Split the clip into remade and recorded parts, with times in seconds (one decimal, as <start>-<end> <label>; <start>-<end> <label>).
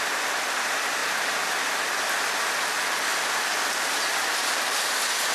0.0-5.3 recorded